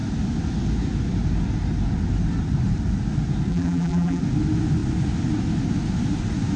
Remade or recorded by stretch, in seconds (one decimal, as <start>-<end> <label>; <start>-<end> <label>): 0.0-3.5 recorded; 3.5-4.2 remade; 4.2-6.6 recorded